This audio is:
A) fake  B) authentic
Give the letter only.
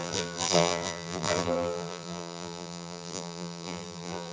A